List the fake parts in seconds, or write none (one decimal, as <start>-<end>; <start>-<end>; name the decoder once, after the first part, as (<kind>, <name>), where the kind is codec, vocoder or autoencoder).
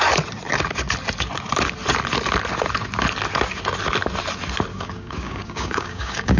4.7-6.4 (codec, DAC)